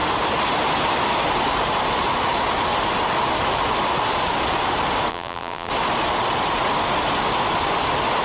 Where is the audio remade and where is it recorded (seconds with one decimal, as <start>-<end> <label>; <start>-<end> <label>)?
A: 0.0-5.1 recorded; 5.1-5.7 remade; 5.7-8.2 recorded